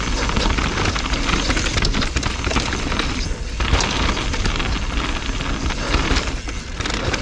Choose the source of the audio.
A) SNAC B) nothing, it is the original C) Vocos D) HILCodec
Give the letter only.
B